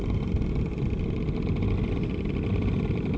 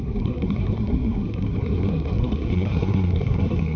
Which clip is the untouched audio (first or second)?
first